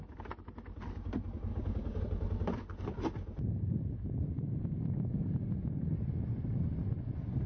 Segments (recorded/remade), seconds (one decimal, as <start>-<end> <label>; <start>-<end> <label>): 0.0-1.5 recorded; 1.5-2.0 remade; 2.0-7.5 recorded